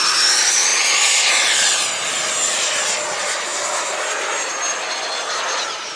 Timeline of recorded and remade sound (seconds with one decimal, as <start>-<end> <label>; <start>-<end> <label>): 0.0-6.0 recorded